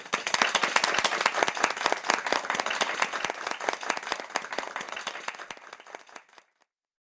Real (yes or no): yes